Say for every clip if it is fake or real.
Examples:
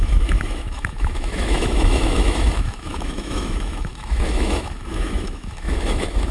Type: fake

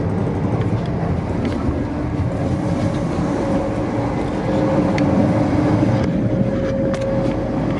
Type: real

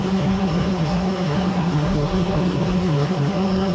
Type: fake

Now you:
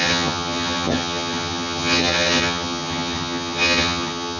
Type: fake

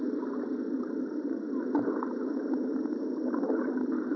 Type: real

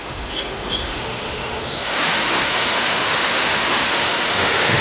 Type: fake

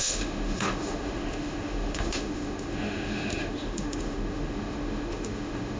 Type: fake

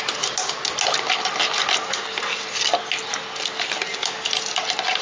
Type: real